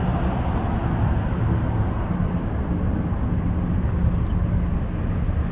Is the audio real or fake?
real